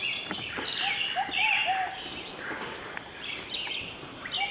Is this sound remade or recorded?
recorded